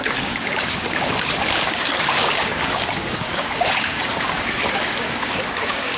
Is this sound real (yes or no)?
no